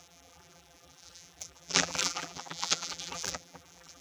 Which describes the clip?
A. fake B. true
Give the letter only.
A